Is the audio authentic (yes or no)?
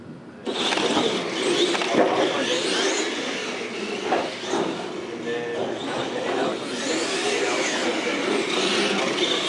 yes